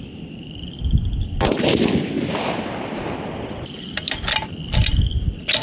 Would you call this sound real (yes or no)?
yes